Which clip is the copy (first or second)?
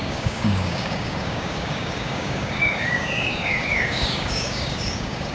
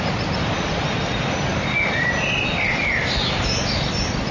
first